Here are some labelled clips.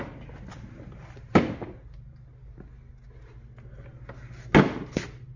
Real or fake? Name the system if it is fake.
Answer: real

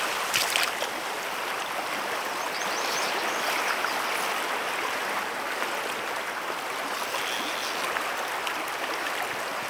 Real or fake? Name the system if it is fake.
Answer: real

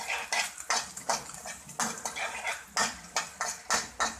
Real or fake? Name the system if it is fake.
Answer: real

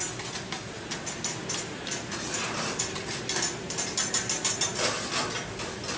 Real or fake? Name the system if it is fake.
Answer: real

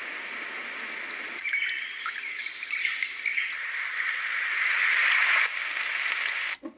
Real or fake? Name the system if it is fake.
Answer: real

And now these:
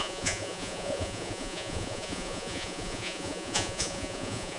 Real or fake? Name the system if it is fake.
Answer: fake, vocoder, Vocos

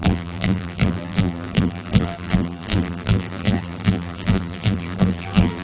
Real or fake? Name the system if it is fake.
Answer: fake, vocoder, BigVGAN v2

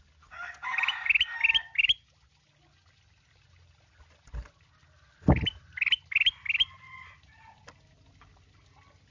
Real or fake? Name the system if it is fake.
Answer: real